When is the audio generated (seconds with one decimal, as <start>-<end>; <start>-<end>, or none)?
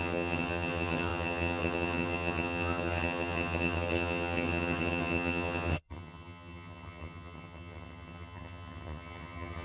0.0-9.6